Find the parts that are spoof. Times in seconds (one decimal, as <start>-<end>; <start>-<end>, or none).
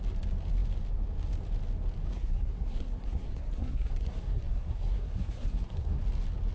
2.1-6.0